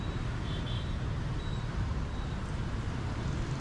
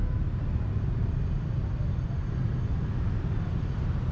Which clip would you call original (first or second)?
second